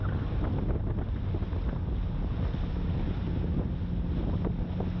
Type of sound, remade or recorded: recorded